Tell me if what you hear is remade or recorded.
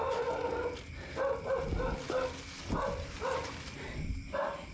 recorded